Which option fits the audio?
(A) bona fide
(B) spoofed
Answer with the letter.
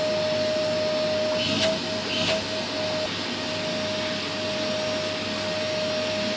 A